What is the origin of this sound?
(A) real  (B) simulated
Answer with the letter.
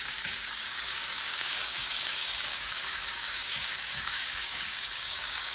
B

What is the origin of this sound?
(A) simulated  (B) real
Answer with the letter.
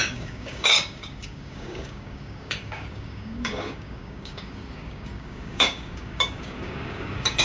A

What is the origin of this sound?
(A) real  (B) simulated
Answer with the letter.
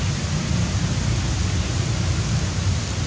A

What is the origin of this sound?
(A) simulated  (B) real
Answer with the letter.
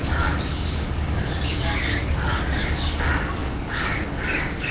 A